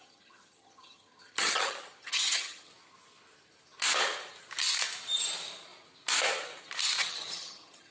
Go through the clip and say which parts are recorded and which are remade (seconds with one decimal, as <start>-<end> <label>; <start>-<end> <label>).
0.0-2.7 remade; 2.7-7.0 recorded; 7.0-7.9 remade

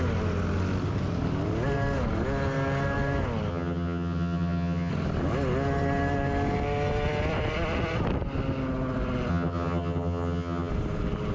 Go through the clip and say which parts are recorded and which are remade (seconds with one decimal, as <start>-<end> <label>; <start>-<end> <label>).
0.0-3.5 recorded; 3.5-4.9 remade; 4.9-9.3 recorded; 9.3-10.7 remade; 10.7-11.3 recorded